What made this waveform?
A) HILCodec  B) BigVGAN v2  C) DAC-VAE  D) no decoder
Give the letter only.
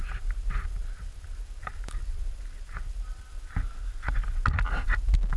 D